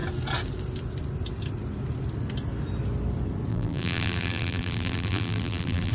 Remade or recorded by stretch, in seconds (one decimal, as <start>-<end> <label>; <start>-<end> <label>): 0.0-3.5 recorded; 3.5-5.9 remade